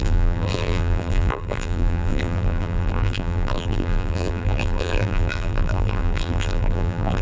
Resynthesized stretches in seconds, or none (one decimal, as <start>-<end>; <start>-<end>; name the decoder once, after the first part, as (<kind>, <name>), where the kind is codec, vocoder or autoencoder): 0.0-7.2 (vocoder, BigVGAN v2)

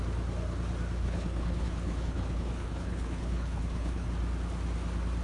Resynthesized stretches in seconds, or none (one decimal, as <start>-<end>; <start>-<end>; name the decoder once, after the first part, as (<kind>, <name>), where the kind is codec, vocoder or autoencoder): 1.0-4.1 (codec, HILCodec)